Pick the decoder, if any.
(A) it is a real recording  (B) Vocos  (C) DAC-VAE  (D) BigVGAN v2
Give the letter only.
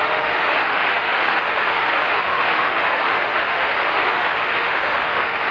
C